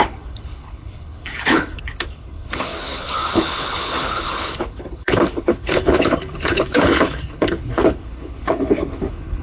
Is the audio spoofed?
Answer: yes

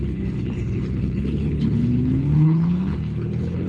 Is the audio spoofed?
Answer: yes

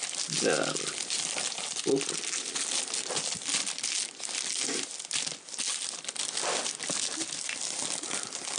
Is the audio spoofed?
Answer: no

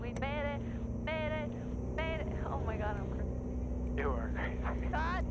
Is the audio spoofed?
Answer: no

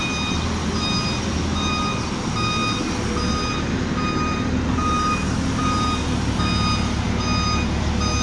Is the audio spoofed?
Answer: no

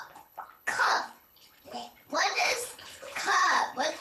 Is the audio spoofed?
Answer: yes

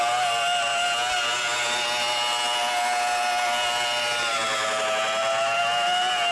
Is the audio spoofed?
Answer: no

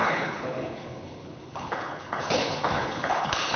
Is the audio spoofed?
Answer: yes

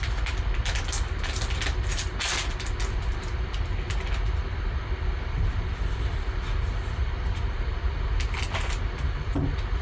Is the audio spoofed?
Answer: no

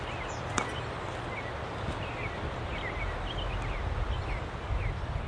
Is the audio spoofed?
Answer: no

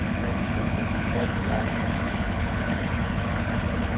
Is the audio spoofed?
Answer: yes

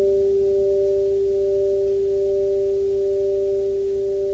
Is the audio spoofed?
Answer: no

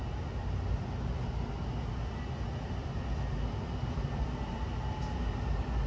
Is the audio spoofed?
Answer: no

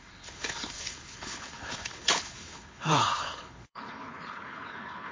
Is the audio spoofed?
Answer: yes